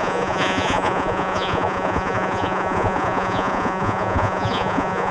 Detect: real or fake fake